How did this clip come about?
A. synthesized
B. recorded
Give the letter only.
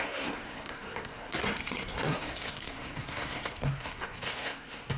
A